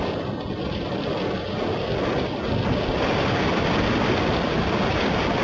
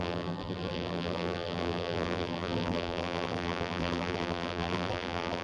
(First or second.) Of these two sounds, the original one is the first